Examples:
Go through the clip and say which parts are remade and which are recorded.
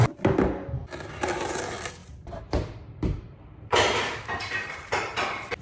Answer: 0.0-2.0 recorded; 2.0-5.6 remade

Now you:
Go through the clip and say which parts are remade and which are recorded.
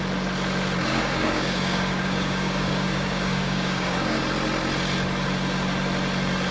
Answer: 0.0-0.9 recorded; 0.9-4.2 remade; 4.2-6.5 recorded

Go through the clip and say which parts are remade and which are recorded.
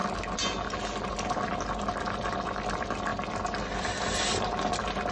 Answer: 0.0-5.1 recorded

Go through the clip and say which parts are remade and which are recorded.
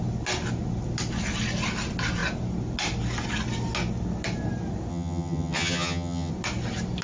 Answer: 0.0-4.9 recorded; 4.9-6.3 remade; 6.3-7.0 recorded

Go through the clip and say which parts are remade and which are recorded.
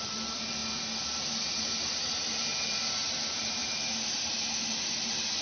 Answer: 0.0-0.6 remade; 0.6-2.7 recorded; 2.7-3.6 remade; 3.6-4.6 recorded; 4.6-5.4 remade